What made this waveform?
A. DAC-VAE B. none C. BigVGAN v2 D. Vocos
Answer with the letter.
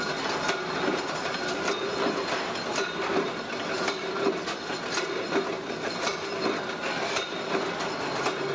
B